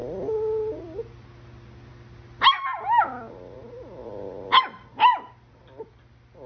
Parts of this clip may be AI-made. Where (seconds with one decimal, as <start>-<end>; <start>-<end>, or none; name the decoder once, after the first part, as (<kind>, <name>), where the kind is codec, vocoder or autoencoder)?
4.0-4.6 (vocoder, BigVGAN v2)